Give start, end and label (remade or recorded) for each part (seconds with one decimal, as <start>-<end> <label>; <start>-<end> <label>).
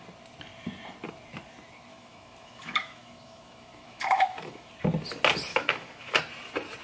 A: 0.0-1.9 recorded; 1.9-4.7 remade; 4.7-5.5 recorded; 5.5-6.1 remade; 6.1-6.8 recorded